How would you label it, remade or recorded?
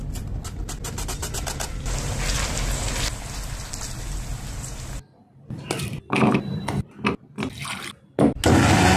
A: recorded